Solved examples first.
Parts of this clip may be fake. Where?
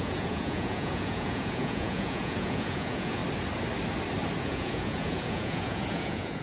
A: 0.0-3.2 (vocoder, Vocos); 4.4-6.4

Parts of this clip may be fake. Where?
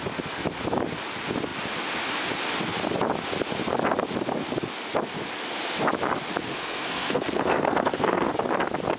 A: 6.5-8.3 (codec, SNAC)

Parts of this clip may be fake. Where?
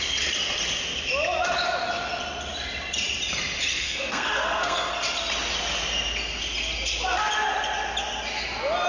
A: 3.7-4.9 (codec, SNAC)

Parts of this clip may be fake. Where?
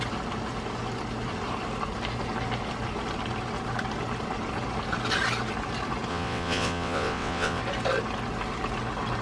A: 6.1-7.6 (vocoder, WaveNeXt)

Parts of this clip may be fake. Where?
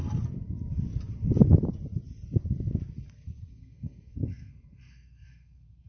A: 3.5-5.9 (codec, SNAC)